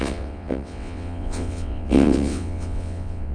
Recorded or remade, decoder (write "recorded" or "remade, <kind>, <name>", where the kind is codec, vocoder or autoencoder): remade, vocoder, WaveNeXt